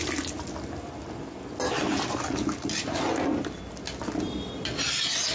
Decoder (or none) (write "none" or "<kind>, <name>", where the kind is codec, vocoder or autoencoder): none